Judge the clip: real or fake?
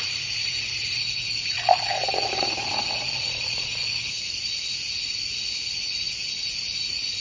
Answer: fake